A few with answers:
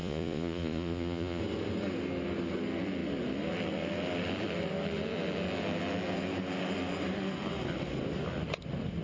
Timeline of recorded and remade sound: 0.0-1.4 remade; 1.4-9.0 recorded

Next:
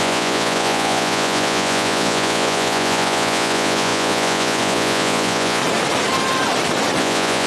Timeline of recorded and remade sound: 0.0-5.6 remade; 5.6-7.0 recorded; 7.0-7.5 remade

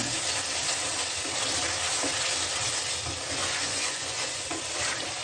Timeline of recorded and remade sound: 0.0-3.4 recorded; 3.4-4.7 remade; 4.7-5.2 recorded

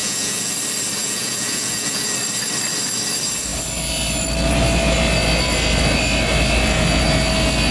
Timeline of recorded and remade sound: 0.0-0.5 remade; 0.5-1.0 recorded; 1.0-2.1 remade; 2.1-7.7 recorded

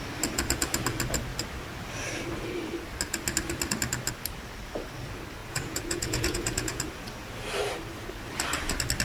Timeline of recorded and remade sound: 0.0-5.4 recorded; 5.4-6.8 remade; 6.8-9.0 recorded

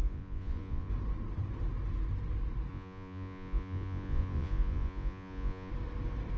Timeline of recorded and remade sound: 0.0-0.9 remade; 0.9-2.7 recorded; 2.7-5.7 remade; 5.7-6.4 recorded